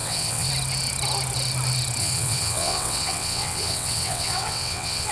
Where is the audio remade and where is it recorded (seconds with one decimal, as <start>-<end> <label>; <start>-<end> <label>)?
0.0-0.5 remade; 0.5-2.0 recorded; 2.0-5.1 remade

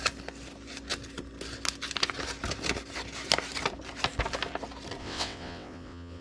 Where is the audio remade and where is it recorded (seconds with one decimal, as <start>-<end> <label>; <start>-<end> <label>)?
0.0-5.0 recorded; 5.0-6.2 remade

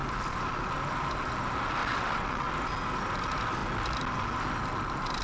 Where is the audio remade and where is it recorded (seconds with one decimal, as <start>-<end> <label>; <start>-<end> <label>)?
0.0-1.8 recorded; 1.8-2.5 remade; 2.5-5.2 recorded

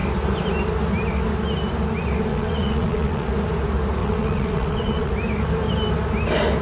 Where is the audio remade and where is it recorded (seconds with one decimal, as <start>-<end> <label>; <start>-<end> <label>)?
0.0-2.3 recorded; 2.3-3.3 remade; 3.3-4.0 recorded; 4.0-5.1 remade; 5.1-6.6 recorded

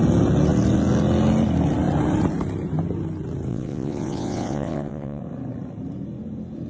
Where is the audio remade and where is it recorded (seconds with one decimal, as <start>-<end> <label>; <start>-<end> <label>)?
0.0-3.5 recorded; 3.5-5.2 remade; 5.2-6.7 recorded

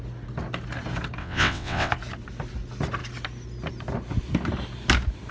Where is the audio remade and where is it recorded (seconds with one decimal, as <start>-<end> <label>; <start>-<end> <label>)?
0.0-1.2 recorded; 1.2-1.9 remade; 1.9-5.3 recorded